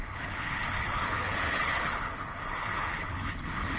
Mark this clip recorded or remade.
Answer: remade